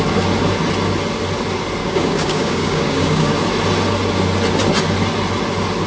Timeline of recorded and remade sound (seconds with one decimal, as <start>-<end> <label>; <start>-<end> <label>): 0.0-1.8 recorded; 1.8-3.3 remade; 3.3-5.9 recorded